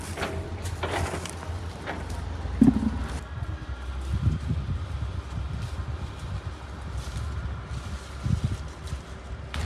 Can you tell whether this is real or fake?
real